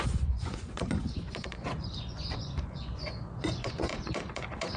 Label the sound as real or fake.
fake